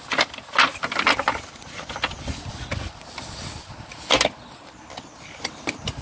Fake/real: real